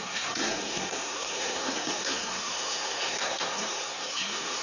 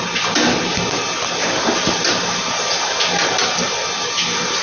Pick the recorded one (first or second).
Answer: second